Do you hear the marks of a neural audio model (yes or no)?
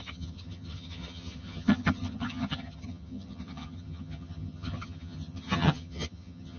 yes